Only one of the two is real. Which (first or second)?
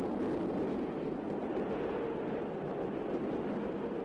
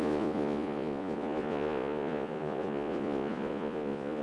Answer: first